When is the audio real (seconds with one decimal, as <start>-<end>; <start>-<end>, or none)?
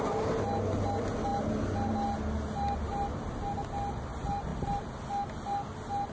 0.0-6.1